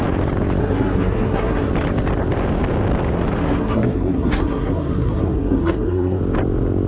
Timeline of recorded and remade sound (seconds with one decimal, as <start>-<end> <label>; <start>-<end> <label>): 0.0-0.6 recorded; 0.6-1.7 remade; 1.7-3.4 recorded; 3.4-6.2 remade; 6.2-6.9 recorded